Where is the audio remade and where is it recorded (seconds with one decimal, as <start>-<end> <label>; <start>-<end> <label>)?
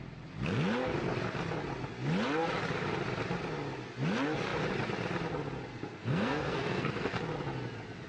0.0-5.7 recorded; 5.7-7.2 remade; 7.2-8.1 recorded